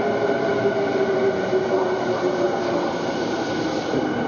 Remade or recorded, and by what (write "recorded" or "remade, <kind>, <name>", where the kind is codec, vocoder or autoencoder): recorded